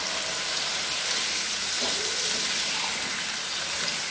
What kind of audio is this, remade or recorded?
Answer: recorded